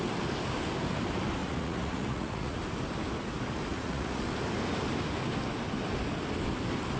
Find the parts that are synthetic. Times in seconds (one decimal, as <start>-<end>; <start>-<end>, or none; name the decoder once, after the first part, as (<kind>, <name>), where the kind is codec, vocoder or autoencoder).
1.4-2.6 (vocoder, Vocos); 3.7-4.2